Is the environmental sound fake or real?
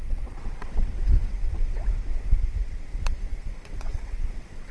fake